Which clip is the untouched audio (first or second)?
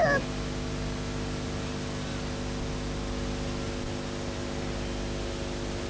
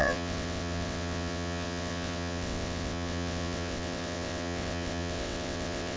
first